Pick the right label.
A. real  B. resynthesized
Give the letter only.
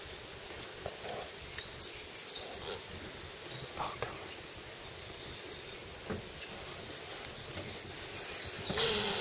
A